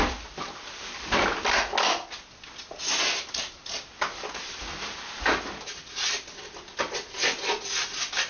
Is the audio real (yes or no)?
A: yes